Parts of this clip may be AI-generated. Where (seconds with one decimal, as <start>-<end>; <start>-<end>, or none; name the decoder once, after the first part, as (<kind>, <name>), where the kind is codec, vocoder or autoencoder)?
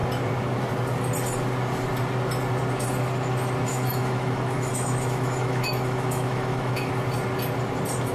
3.7-6.9 (autoencoder, DAC-VAE)